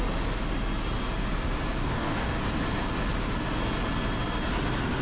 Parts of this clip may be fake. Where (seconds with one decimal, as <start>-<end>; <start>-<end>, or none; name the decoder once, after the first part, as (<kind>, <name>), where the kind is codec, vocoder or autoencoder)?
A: 1.8-2.4 (codec, DAC)

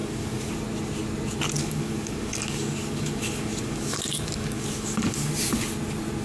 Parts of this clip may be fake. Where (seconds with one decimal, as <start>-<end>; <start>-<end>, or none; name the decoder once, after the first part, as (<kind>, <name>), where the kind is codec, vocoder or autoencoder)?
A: 0.0-0.5 (codec, DAC); 1.6-5.3